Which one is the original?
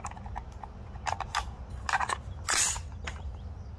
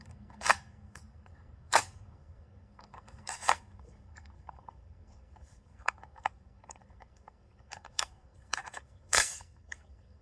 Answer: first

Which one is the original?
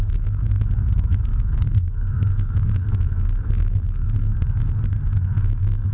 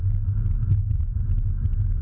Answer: second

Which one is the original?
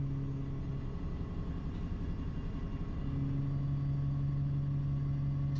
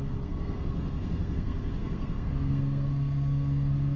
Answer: first